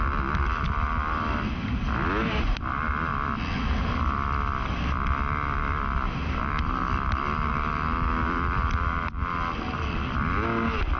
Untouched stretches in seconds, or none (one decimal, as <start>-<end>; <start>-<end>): 0.0-11.0